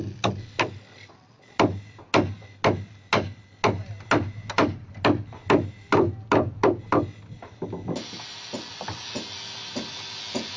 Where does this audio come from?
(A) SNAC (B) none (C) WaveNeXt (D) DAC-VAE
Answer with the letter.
B